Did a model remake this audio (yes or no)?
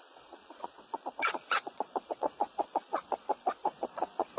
yes